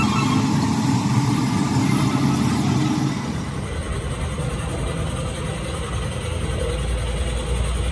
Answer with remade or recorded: recorded